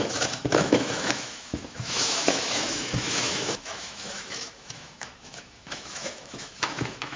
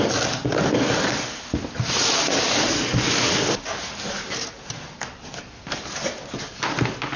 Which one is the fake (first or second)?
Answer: first